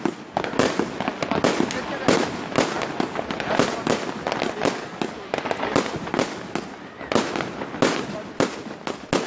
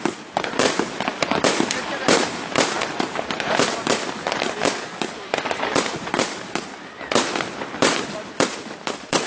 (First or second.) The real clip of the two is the first